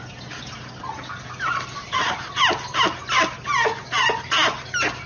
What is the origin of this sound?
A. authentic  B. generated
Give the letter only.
A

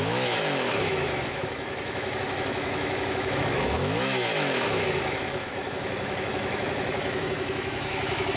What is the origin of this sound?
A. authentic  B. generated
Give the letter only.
B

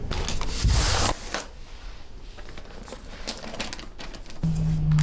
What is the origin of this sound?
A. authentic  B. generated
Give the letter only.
A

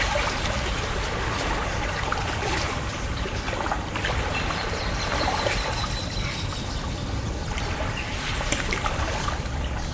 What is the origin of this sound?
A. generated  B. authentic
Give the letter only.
A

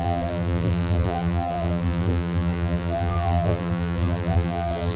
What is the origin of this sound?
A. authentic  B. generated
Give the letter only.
B